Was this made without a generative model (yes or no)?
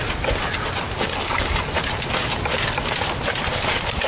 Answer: yes